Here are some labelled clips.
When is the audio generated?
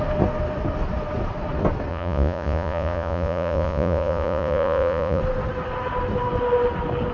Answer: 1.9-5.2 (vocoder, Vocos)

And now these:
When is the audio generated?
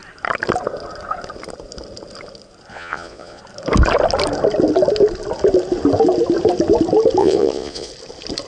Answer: 2.7-3.4 (vocoder, Vocos); 7.2-7.9